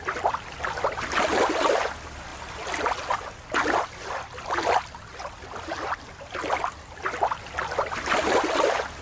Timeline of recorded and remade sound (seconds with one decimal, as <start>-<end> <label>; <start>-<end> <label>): 0.0-9.0 recorded